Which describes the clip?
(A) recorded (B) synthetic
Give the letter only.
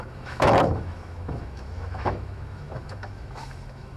B